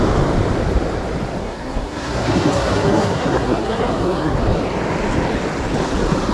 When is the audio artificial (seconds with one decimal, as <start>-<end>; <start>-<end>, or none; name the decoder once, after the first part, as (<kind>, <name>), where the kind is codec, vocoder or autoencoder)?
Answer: 1.4-4.4 (codec, SNAC)